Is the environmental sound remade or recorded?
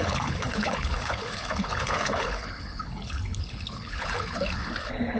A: remade